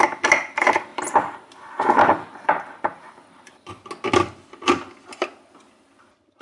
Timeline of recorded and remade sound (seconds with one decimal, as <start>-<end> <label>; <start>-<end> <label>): 0.0-0.9 recorded; 0.9-3.7 remade; 3.7-6.4 recorded